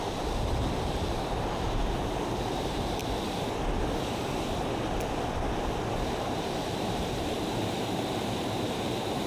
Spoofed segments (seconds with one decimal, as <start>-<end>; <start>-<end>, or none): 0.0-3.0; 6.0-9.3